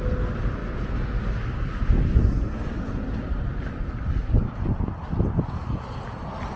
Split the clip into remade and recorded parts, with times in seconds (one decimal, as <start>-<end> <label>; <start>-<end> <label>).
0.0-6.6 recorded